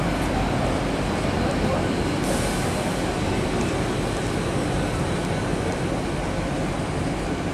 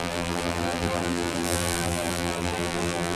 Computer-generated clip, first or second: second